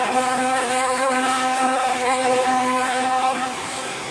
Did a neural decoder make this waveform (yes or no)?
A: yes